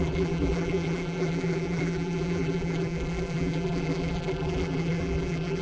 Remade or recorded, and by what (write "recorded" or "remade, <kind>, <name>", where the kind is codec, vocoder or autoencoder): remade, vocoder, BigVGAN v2